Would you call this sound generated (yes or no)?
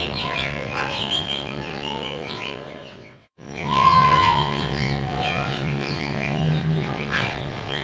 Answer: yes